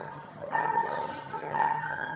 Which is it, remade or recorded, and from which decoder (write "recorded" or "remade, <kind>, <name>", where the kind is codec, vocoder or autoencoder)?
remade, vocoder, HiFi-GAN